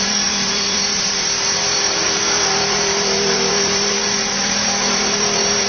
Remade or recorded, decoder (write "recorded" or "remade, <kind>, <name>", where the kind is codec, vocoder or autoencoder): remade, vocoder, BigVGAN v2